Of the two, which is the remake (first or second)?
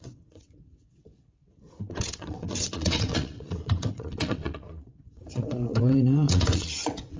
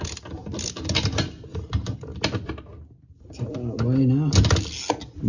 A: first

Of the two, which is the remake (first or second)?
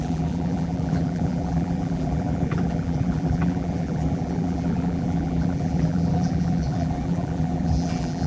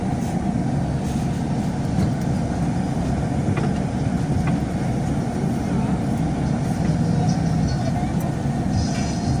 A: first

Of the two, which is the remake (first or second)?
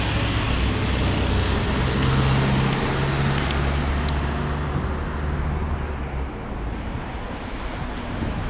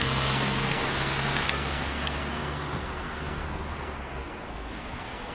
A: second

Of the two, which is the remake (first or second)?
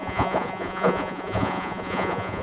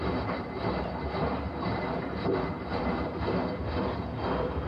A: first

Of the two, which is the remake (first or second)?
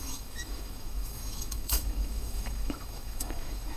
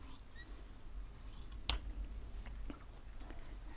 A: first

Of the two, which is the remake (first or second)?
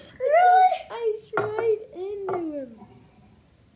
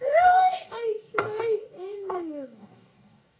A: second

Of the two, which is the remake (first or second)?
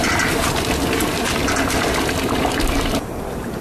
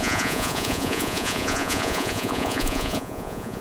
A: second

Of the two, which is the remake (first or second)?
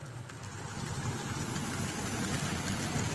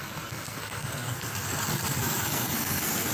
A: second